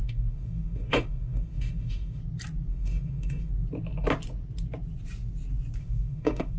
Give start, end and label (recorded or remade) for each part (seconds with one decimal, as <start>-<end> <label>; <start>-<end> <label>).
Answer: 0.0-2.2 remade; 2.2-2.7 recorded; 2.7-3.5 remade; 3.5-5.8 recorded; 5.8-6.6 remade